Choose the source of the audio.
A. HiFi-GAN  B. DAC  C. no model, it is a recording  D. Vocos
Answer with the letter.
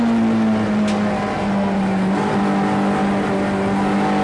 C